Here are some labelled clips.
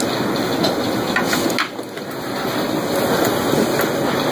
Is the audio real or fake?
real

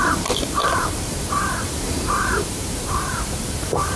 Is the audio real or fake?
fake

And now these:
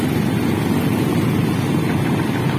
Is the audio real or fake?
real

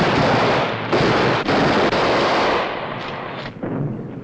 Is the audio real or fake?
real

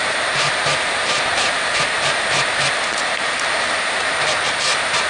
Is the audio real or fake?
fake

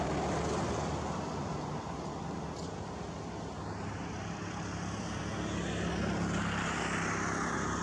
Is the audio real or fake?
real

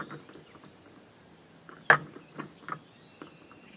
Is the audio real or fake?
real